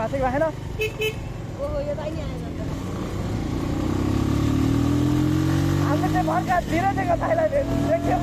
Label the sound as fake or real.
real